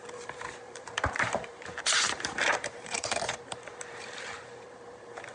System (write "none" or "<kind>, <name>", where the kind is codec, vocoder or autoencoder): vocoder, BigVGAN v2